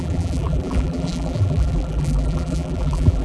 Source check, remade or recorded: remade